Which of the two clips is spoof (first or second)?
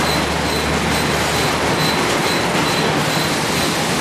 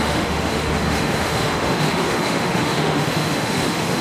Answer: second